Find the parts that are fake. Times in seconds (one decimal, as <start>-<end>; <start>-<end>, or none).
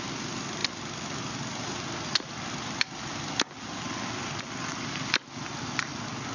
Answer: none